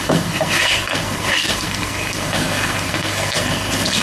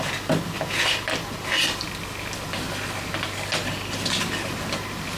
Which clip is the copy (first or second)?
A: first